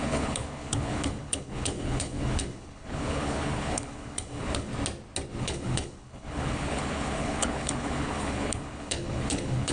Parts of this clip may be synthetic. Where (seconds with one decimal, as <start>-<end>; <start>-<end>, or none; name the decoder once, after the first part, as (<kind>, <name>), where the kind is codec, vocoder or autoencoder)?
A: 0.0-4.7 (codec, HILCodec); 5.4-9.7